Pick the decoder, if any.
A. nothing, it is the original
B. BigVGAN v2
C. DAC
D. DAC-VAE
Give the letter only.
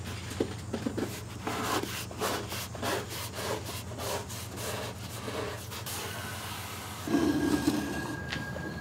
A